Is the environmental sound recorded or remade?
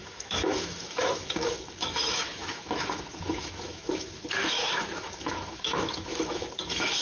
remade